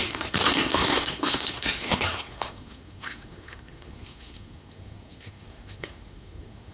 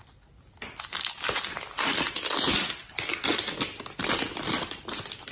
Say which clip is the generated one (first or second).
first